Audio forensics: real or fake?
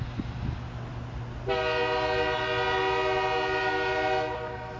real